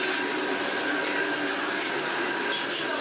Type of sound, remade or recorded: recorded